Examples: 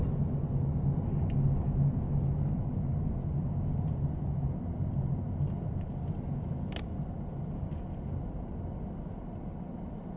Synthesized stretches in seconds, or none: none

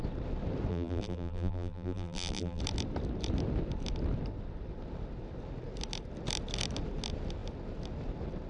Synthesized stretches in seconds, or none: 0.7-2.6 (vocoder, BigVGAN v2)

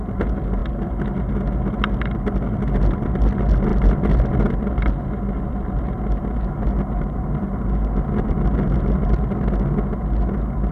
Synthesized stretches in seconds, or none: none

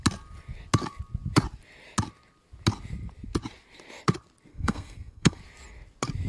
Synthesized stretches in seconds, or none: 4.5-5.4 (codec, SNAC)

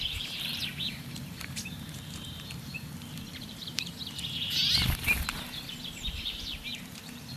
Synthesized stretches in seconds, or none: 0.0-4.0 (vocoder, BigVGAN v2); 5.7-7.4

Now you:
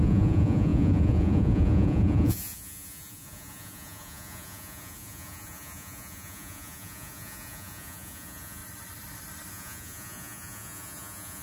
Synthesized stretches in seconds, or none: 0.0-8.6 (vocoder, Vocos); 9.5-11.4

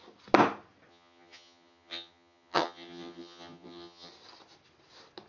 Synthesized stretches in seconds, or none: 0.9-4.1 (vocoder, HiFi-GAN)

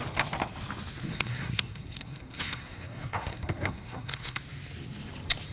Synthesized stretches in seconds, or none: 1.1-4.4 (codec, SNAC)